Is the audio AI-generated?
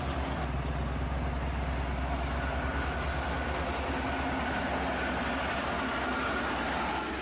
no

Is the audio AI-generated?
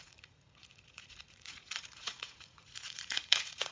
yes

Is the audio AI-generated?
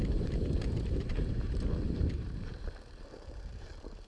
yes